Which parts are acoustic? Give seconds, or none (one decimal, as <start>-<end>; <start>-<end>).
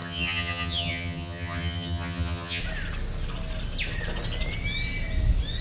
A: 2.6-5.6